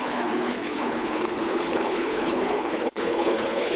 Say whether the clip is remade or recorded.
remade